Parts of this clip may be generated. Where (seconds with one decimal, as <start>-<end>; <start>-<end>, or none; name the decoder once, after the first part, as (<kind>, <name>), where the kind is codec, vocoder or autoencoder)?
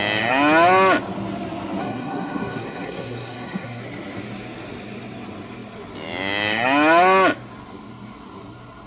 1.8-3.8 (codec, SNAC)